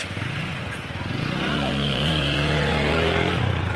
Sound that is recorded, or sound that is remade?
remade